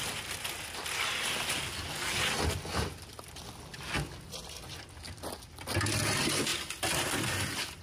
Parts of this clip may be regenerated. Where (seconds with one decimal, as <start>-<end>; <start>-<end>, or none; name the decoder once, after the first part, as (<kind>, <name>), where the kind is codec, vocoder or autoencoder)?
none